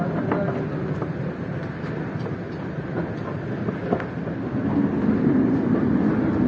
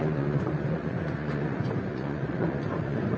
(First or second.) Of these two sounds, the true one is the first